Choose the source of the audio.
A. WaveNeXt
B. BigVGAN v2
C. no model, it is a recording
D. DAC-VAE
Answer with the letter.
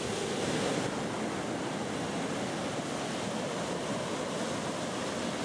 C